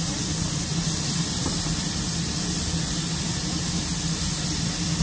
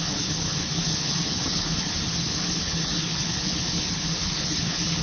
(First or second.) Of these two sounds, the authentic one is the first